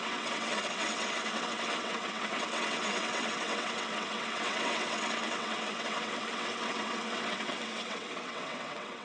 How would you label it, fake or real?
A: fake